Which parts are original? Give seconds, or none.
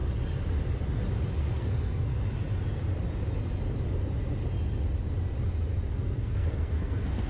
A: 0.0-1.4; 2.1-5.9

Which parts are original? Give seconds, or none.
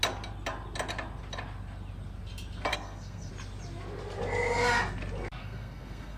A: 0.0-2.7; 3.3-5.4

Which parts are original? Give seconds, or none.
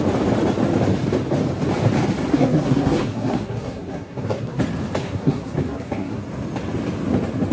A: 0.0-2.3; 4.6-5.0; 6.2-7.5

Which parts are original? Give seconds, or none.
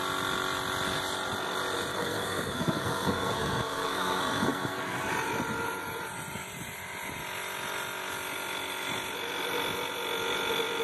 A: 0.0-1.9; 5.1-10.8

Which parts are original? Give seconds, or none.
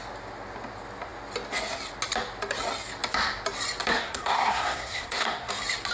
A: 0.0-3.9; 5.5-5.9